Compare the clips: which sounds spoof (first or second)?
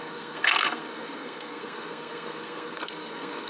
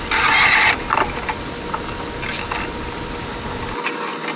first